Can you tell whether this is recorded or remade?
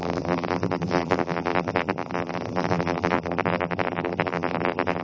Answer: remade